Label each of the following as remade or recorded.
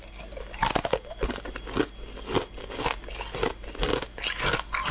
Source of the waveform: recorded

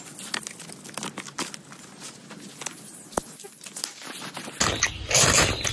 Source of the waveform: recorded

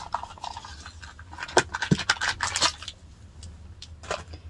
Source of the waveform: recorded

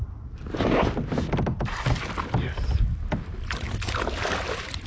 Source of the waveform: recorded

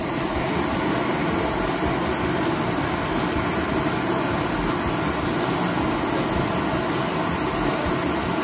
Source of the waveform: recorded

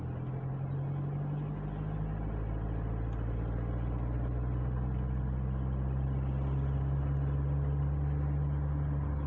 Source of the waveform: recorded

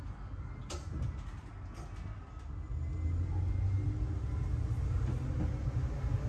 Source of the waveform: recorded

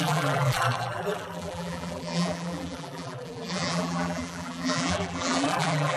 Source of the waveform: remade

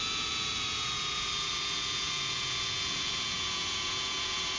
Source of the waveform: remade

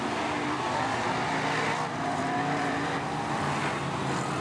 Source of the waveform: recorded